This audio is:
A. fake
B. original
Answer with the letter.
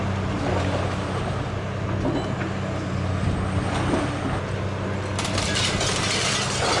B